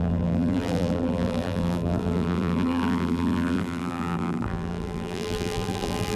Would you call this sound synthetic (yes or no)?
yes